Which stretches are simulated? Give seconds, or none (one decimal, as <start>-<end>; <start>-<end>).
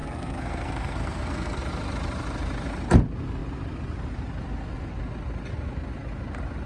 0.0-1.6